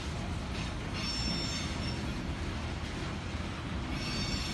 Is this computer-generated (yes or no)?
no